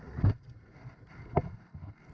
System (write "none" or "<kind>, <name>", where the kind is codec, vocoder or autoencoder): none